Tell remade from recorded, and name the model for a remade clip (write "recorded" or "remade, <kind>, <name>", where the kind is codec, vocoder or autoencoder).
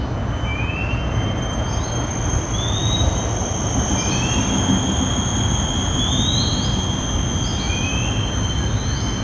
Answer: recorded